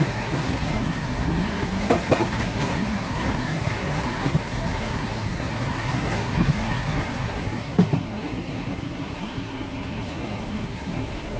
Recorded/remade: remade